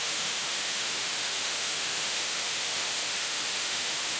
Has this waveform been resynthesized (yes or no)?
yes